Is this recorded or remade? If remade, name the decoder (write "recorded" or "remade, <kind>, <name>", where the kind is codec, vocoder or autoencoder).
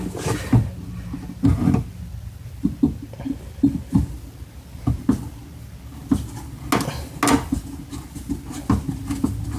recorded